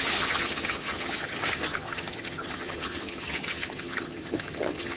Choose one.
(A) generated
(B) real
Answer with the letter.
A